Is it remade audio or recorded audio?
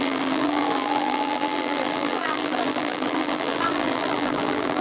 remade